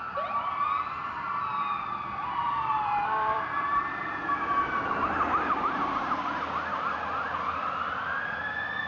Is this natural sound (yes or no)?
no